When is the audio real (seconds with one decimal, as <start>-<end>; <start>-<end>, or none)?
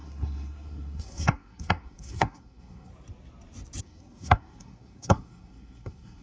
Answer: 2.9-3.8